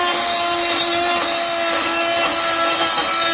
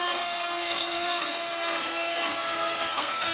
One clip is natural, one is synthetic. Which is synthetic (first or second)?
second